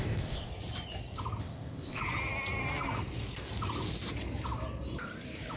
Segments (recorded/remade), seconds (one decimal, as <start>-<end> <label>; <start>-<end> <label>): 0.0-0.5 remade; 0.5-1.4 recorded; 1.4-2.0 remade; 2.0-5.6 recorded